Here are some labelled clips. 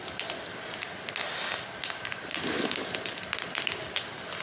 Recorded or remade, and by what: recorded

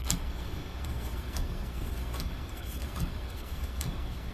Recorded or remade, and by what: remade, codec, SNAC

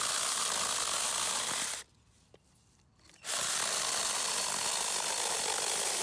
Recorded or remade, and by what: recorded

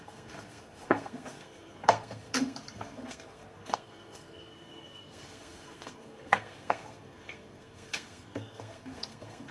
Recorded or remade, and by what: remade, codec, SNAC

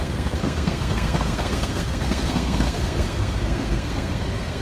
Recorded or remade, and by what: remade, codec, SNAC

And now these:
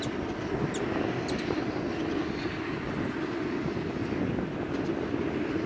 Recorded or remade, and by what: recorded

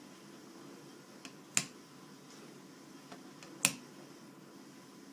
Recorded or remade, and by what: recorded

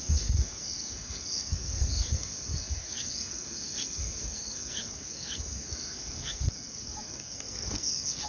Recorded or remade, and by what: remade, codec, SNAC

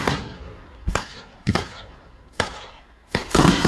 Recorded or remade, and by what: remade, codec, SNAC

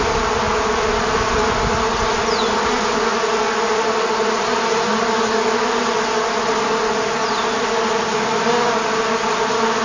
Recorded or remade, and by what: recorded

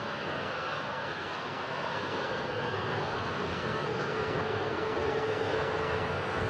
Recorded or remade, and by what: remade, codec, SNAC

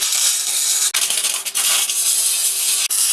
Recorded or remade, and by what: recorded